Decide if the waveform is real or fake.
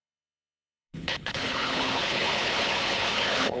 fake